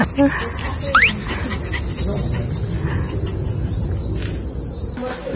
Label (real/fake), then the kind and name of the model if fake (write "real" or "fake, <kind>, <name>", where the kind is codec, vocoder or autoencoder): real